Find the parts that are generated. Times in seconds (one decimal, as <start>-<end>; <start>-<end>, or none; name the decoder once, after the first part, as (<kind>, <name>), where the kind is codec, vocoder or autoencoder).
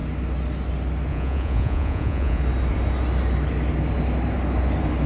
1.1-2.4 (vocoder, Vocos)